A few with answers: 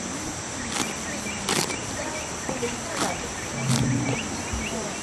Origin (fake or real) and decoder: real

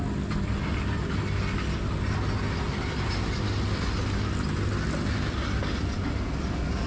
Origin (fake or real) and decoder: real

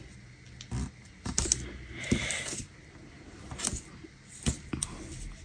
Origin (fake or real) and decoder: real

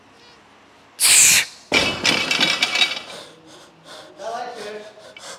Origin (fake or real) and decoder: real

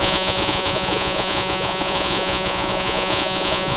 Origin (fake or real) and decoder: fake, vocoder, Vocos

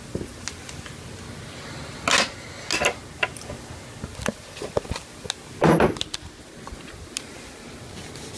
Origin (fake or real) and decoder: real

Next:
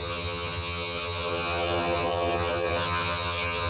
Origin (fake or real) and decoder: fake, vocoder, HiFi-GAN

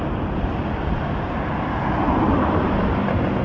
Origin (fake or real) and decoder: real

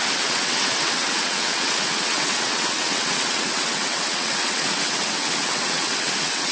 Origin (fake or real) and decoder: fake, vocoder, WaveNeXt